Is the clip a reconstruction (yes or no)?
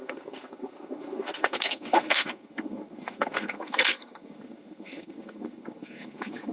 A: yes